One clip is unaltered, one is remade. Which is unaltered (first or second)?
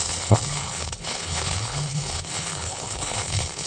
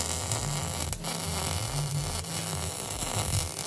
second